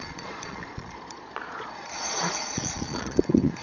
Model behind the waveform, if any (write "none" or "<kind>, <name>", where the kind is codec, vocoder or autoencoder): vocoder, Vocos